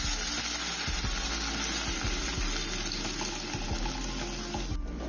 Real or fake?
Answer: real